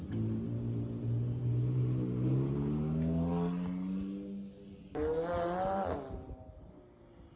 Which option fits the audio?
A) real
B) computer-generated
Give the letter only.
A